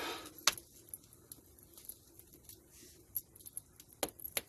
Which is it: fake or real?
real